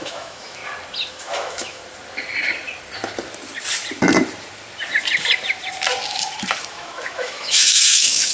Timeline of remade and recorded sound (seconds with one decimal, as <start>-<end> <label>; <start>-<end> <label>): 0.0-0.6 remade; 0.6-1.1 recorded; 1.1-1.8 remade; 1.8-6.7 recorded; 6.7-8.3 remade